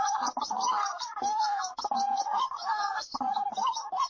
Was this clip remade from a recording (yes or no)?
yes